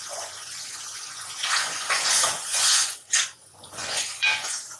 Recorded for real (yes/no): no